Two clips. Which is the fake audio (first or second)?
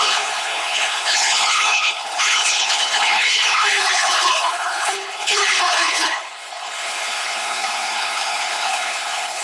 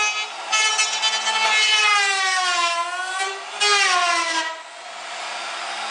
first